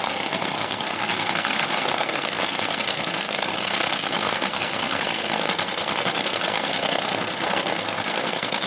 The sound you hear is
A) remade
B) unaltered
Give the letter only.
A